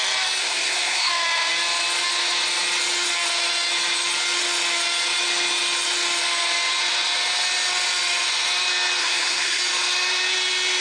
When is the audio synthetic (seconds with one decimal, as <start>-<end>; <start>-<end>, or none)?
0.4-1.1; 9.0-9.6